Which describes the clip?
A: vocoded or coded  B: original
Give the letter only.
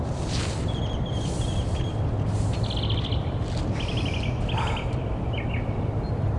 B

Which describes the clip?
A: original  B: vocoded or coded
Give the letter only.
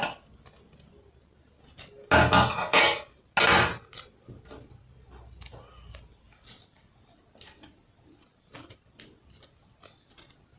A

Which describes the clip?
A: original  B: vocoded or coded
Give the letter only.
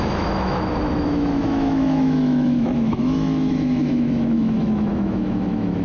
B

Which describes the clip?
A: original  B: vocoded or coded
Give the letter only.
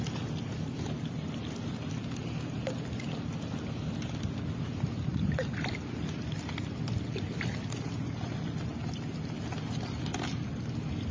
A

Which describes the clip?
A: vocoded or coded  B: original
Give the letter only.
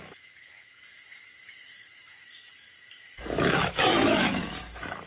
A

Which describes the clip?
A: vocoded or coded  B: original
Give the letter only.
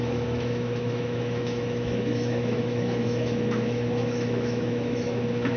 A